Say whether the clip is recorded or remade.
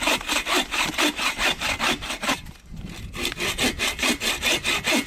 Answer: recorded